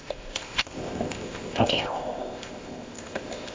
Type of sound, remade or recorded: remade